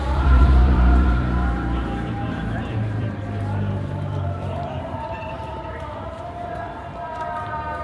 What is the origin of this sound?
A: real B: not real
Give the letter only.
B